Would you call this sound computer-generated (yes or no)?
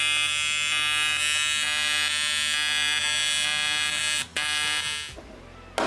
no